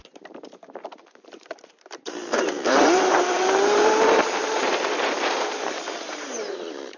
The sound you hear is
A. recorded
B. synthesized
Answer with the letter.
B